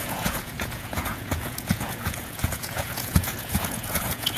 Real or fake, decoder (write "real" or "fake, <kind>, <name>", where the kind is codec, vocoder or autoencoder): fake, vocoder, Vocos